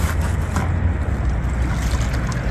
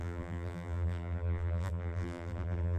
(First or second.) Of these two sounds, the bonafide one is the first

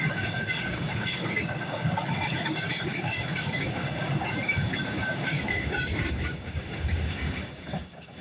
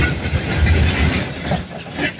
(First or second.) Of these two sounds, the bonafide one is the second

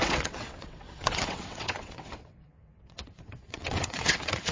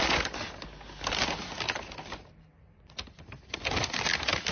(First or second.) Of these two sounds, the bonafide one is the second